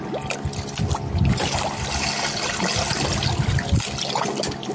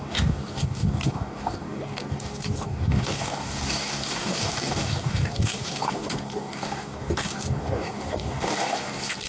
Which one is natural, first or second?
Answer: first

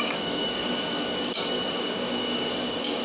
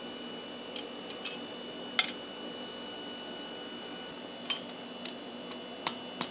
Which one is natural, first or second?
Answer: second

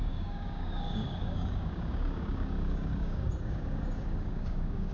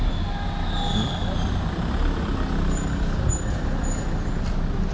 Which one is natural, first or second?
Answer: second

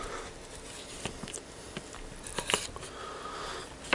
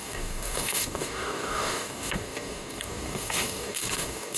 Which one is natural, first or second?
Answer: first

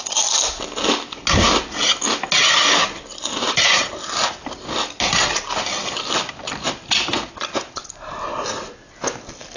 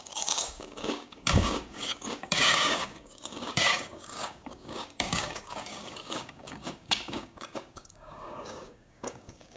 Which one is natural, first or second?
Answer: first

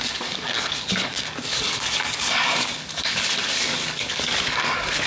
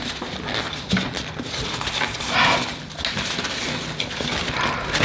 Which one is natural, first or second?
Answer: second